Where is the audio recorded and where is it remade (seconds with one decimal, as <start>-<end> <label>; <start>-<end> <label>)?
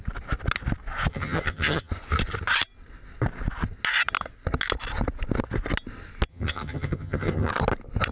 0.0-1.1 recorded; 1.1-1.9 remade; 1.9-6.3 recorded; 6.3-7.5 remade; 7.5-8.1 recorded